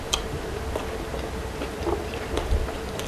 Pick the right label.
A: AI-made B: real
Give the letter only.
A